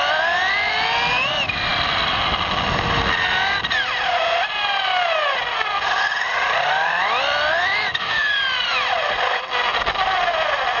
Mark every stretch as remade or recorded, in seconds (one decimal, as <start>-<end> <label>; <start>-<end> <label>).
0.0-7.9 recorded; 7.9-8.4 remade; 8.4-10.8 recorded